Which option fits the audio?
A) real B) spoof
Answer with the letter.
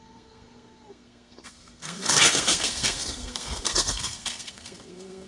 B